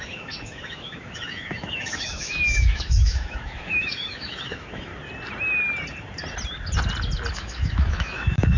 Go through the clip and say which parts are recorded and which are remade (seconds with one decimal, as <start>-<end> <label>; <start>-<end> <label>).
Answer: 0.0-4.9 remade; 4.9-7.3 recorded; 7.3-8.6 remade